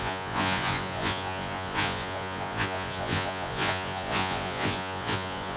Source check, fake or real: fake